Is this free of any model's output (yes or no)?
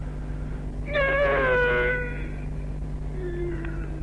yes